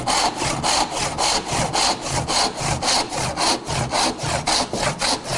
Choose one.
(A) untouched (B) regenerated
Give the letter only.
A